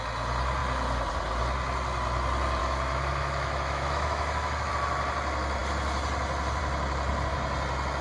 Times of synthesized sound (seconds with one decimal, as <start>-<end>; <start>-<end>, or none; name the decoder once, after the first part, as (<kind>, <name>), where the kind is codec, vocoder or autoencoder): 2.6-4.7 (autoencoder, DAC-VAE)